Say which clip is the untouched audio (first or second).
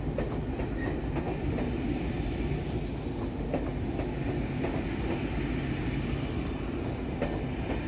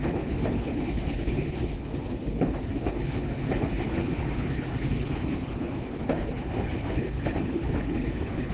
first